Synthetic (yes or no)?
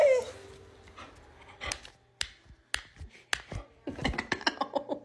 no